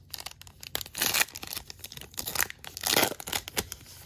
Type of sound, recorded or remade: recorded